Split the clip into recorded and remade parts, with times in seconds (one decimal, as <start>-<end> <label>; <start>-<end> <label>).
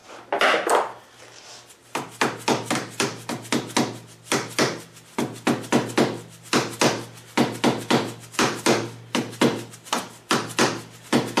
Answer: 0.0-11.4 recorded